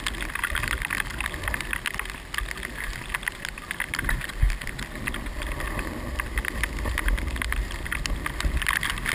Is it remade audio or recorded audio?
recorded